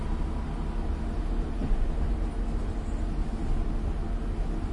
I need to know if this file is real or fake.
real